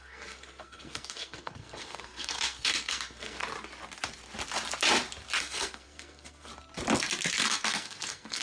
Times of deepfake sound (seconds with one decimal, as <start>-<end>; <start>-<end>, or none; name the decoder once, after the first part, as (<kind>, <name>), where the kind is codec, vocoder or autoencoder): 0.0-3.4 (codec, SNAC); 5.4-6.5; 7.3-8.4